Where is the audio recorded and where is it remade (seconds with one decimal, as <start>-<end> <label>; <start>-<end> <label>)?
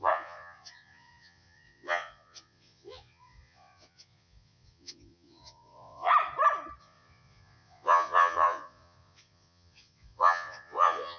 0.0-6.1 remade; 6.1-6.8 recorded; 6.8-11.2 remade